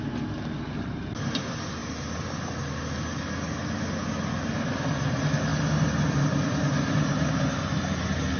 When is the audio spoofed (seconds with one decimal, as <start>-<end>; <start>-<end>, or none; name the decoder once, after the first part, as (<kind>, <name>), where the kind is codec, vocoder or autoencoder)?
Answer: none

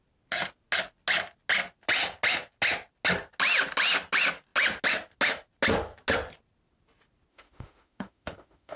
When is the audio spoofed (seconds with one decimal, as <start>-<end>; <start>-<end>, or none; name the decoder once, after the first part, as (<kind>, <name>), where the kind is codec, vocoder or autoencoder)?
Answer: 7.3-8.8 (autoencoder, DAC-VAE)

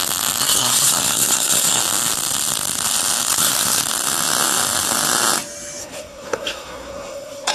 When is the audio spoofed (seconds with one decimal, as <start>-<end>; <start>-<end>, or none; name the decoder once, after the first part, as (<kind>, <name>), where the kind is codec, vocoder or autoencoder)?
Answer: 0.4-1.8 (codec, SNAC); 3.3-3.8; 5.8-7.5

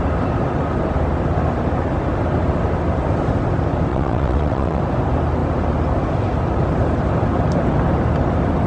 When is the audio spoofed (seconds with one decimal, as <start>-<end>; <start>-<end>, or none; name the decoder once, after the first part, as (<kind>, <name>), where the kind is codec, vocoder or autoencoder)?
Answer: 3.9-4.8 (vocoder, WaveNeXt)

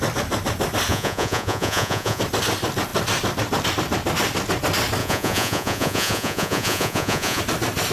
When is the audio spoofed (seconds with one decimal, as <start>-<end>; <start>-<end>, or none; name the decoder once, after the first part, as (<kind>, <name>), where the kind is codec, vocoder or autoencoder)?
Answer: 0.9-2.2 (vocoder, Vocos); 5.0-7.4